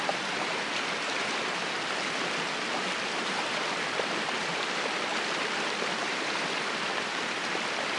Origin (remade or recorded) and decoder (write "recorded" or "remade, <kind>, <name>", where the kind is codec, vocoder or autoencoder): remade, vocoder, BigVGAN v2